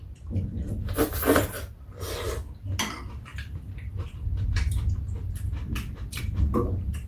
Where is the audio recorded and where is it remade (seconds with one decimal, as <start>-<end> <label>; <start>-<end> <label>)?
0.0-7.1 recorded